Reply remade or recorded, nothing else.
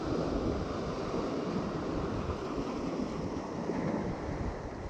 remade